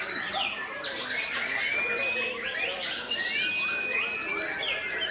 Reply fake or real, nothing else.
real